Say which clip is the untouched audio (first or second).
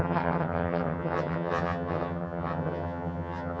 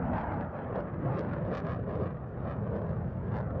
second